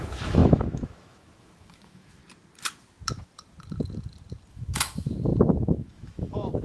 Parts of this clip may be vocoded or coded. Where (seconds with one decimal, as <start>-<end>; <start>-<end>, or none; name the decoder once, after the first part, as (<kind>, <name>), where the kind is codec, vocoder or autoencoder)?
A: 0.0-2.2 (autoencoder, DAC-VAE); 4.5-6.6